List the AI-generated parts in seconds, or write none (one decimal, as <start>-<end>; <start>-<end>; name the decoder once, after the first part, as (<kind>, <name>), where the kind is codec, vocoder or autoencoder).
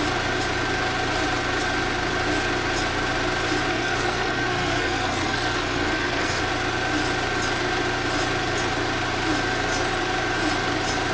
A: 3.7-6.4 (codec, SNAC)